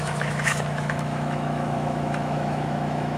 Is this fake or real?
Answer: fake